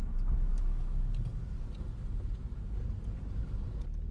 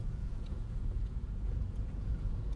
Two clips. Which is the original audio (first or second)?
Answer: first